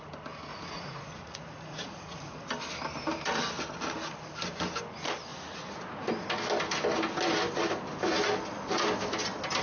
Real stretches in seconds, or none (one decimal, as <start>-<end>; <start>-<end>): 0.0-0.5; 2.5-5.3; 6.1-9.6